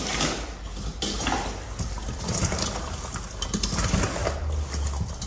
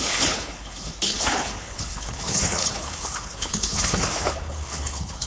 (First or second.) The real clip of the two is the first